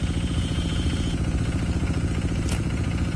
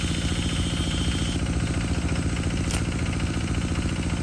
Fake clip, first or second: first